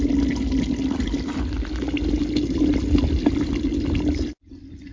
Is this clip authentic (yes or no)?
yes